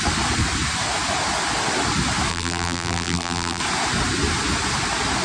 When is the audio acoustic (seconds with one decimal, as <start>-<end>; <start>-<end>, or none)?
0.0-2.3; 3.6-5.2